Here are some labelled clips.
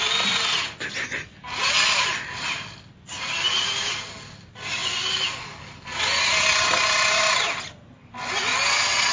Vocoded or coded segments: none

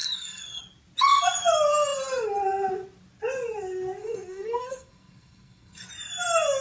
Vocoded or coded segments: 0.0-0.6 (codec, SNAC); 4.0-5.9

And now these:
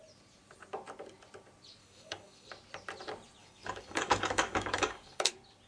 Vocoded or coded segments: 1.8-2.5 (codec, DAC); 3.4-5.3

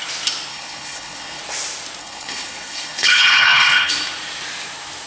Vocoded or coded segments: 0.5-1.4 (codec, HILCodec); 2.0-3.9

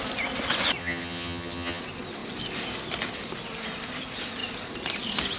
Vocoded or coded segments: 0.8-1.8 (vocoder, HiFi-GAN)